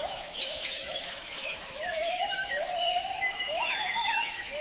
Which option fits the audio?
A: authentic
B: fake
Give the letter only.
B